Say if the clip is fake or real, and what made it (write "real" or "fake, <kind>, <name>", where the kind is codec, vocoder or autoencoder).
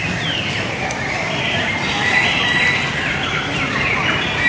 real